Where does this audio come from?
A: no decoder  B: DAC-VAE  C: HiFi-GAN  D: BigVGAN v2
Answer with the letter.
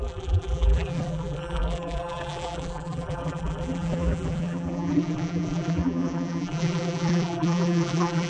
D